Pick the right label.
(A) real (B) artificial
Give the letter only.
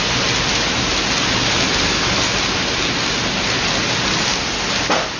A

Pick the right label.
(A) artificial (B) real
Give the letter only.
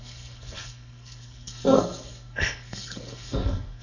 A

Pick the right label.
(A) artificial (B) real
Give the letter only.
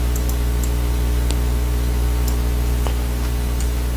B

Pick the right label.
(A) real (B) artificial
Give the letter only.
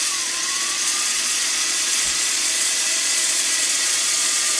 B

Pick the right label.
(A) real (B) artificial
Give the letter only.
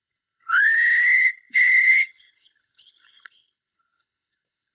B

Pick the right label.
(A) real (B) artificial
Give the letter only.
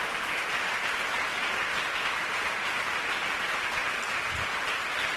A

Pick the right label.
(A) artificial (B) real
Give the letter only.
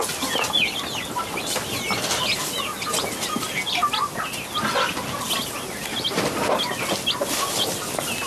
B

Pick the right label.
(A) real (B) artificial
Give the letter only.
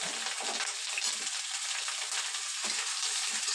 A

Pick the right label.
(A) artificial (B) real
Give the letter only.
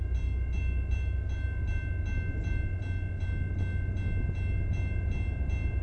B